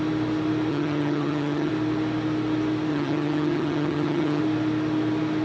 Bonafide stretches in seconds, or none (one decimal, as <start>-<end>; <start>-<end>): 0.0-0.7; 1.7-2.9; 4.4-5.4